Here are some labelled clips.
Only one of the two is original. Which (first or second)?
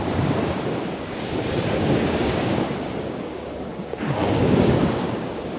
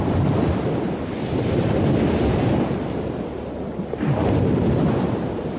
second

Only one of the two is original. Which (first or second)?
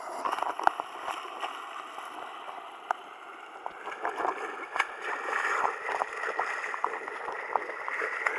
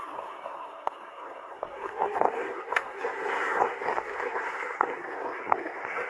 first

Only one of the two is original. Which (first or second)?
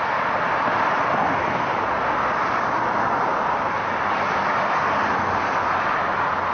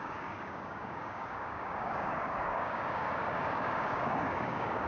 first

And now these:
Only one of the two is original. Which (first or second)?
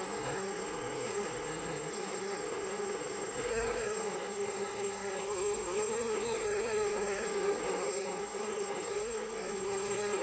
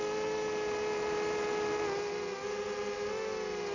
second